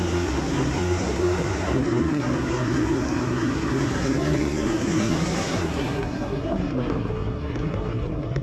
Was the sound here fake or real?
fake